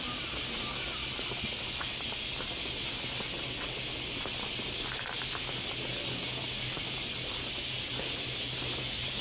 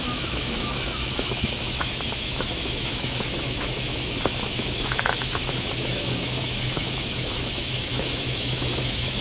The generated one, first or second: second